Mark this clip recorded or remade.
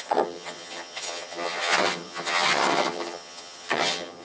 remade